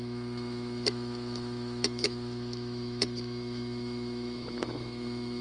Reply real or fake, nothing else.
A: fake